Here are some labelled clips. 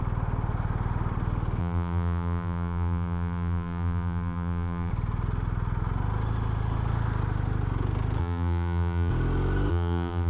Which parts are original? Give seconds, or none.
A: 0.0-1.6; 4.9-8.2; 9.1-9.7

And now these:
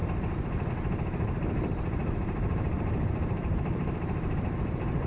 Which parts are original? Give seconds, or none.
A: none

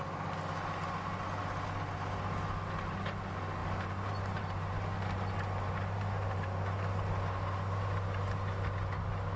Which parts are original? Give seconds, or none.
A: 0.0-9.4

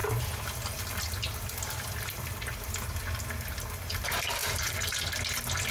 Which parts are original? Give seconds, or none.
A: 0.0-4.4; 5.0-5.7

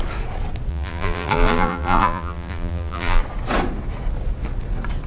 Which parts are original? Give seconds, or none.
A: 0.0-0.7; 3.2-5.1

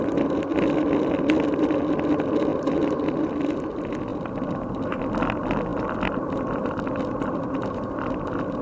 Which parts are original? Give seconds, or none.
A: 0.0-2.5; 3.3-4.1; 5.0-5.7; 7.3-8.6